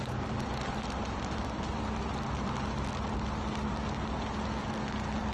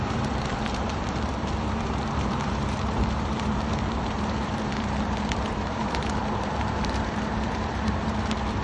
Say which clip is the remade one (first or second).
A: second